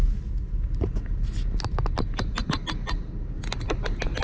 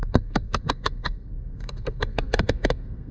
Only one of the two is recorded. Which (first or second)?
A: first